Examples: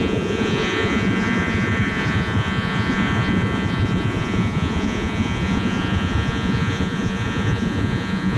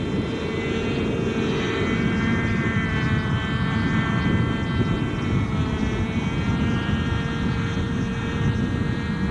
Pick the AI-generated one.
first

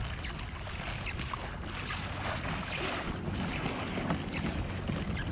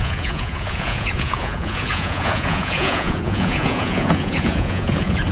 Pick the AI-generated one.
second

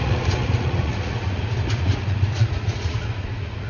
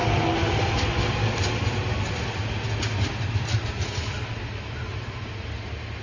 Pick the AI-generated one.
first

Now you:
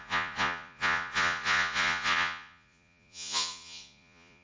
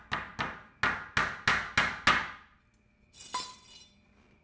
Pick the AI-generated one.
first